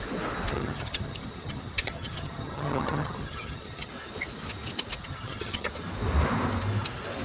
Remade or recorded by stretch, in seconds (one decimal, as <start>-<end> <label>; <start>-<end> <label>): 0.0-0.5 recorded; 0.5-3.9 remade; 3.9-5.0 recorded; 5.0-5.7 remade; 5.7-7.2 recorded